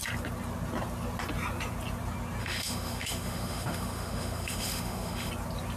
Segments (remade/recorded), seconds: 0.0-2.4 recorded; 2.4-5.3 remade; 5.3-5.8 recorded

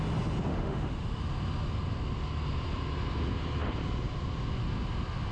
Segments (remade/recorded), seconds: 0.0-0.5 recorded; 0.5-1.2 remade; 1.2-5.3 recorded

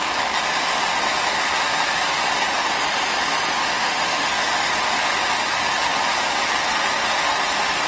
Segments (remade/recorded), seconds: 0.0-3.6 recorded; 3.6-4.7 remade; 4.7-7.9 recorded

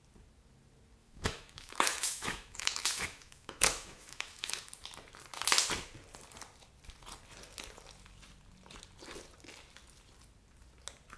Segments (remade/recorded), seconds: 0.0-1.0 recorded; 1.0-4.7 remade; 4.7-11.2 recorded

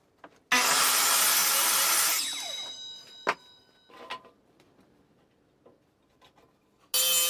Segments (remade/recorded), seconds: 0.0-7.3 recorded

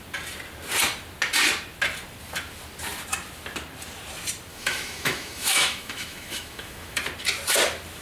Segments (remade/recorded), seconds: 0.0-4.5 recorded; 4.5-7.0 remade; 7.0-8.0 recorded

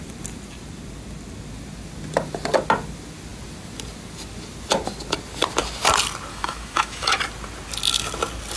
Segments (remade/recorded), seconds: 0.0-6.3 recorded; 6.3-7.2 remade; 7.2-8.6 recorded

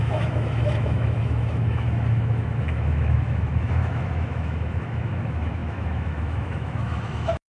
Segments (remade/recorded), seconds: 0.0-7.5 remade